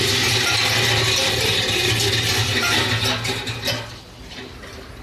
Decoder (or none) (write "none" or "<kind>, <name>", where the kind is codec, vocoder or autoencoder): none